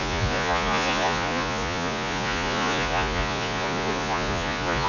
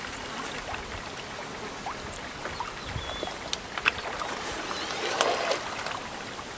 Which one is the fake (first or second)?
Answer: first